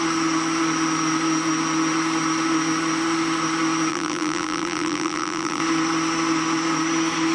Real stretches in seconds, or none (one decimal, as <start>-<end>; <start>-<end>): 0.0-3.9; 5.6-7.3